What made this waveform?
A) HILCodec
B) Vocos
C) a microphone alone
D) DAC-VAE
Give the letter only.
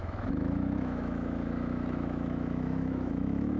D